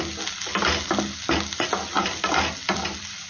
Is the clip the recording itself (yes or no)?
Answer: yes